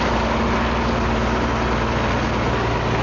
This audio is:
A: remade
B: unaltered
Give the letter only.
B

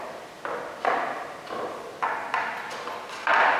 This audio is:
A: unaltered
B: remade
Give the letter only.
A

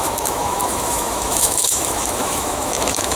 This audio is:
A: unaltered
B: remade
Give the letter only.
B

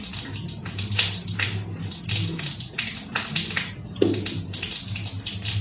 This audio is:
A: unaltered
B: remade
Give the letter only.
A